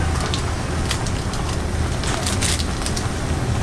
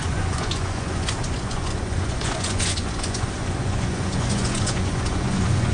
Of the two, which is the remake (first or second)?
second